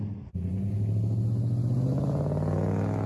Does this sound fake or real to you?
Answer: real